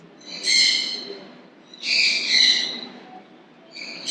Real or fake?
real